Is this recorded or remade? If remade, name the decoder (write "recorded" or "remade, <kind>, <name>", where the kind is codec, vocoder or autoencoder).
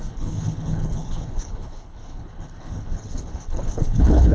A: remade, codec, HILCodec